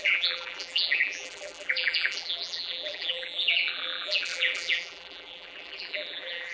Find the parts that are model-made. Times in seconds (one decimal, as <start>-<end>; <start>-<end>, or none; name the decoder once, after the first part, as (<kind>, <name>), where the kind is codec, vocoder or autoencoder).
0.0-6.5 (vocoder, BigVGAN v2)